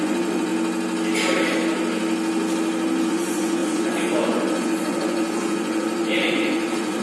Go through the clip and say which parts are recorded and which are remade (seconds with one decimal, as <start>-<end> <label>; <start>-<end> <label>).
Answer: 0.0-0.5 remade; 0.5-3.1 recorded; 3.1-7.0 remade